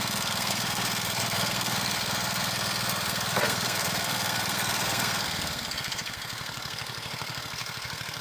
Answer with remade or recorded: remade